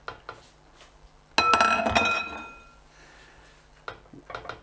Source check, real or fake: real